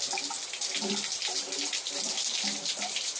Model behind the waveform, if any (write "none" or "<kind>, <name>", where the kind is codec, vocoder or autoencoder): none